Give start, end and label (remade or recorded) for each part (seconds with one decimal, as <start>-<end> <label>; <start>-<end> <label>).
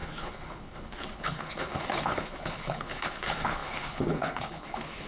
0.0-5.1 remade